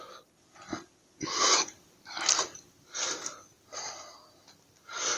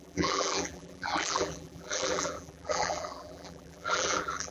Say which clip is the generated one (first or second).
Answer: second